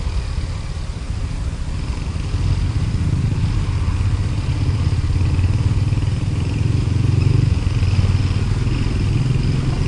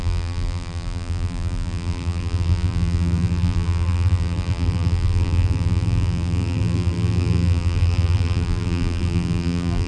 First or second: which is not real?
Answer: second